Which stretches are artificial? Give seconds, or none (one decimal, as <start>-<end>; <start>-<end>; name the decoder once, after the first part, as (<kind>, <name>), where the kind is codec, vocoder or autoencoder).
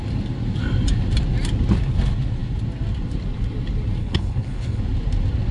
4.0-4.8 (codec, HILCodec)